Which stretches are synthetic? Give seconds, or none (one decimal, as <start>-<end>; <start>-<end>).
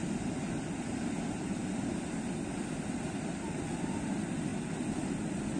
none